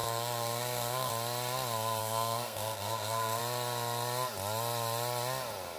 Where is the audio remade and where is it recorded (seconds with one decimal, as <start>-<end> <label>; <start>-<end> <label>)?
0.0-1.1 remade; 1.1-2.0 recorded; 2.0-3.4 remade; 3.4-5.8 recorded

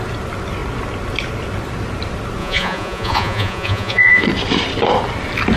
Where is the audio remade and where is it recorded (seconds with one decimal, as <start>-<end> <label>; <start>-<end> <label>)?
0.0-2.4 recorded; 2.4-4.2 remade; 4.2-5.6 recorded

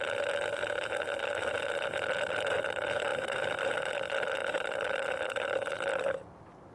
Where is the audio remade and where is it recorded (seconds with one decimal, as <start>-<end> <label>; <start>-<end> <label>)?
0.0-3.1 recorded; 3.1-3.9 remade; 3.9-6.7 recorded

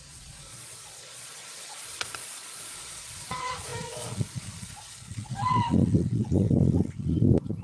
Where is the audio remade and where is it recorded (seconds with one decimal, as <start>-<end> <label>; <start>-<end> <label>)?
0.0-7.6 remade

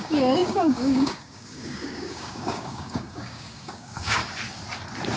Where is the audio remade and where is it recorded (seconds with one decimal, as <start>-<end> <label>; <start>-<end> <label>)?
0.0-4.2 remade; 4.2-5.2 recorded

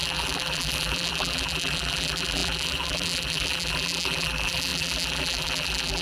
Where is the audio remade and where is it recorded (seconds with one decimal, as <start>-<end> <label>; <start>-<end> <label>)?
0.0-6.0 remade

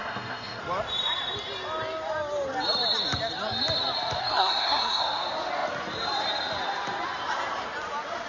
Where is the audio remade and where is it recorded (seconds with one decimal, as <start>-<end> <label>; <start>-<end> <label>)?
0.0-0.6 remade; 0.6-4.2 recorded; 4.2-5.0 remade; 5.0-8.3 recorded